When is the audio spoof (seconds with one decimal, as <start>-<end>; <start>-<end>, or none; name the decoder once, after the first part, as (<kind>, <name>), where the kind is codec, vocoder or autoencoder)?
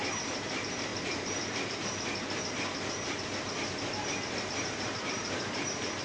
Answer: 0.0-0.9 (vocoder, BigVGAN v2); 4.5-6.0